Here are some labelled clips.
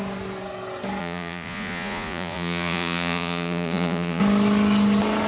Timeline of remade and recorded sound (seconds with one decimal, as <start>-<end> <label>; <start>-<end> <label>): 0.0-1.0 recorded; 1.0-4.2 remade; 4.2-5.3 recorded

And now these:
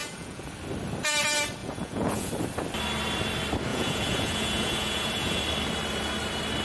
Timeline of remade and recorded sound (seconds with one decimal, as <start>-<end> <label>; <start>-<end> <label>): 0.0-0.5 remade; 0.5-1.6 recorded; 1.6-2.3 remade; 2.3-3.7 recorded; 3.7-5.4 remade; 5.4-6.6 recorded

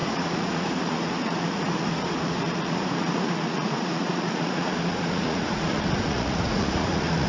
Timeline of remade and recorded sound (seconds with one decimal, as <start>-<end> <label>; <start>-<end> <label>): 0.0-7.3 remade

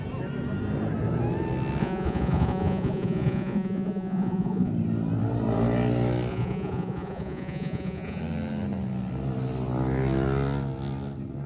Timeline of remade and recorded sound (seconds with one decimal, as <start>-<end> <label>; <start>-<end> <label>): 0.0-1.8 recorded; 1.8-4.7 remade; 4.7-6.3 recorded; 6.3-8.2 remade; 8.2-11.5 recorded

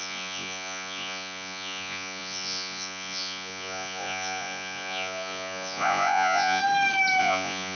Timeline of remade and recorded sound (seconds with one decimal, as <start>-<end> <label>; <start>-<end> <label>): 0.0-6.6 remade; 6.6-7.2 recorded; 7.2-7.7 remade